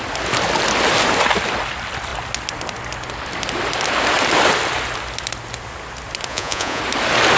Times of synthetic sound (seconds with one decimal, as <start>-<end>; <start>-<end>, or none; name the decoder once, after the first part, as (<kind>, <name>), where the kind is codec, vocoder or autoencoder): 6.3-6.8 (vocoder, Vocos)